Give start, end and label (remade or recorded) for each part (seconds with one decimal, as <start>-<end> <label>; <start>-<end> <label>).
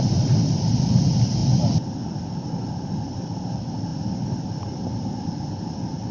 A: 0.0-6.1 recorded